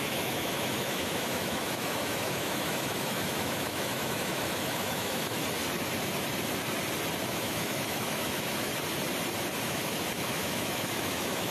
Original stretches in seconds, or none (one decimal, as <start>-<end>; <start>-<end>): 5.4-7.3; 8.7-9.6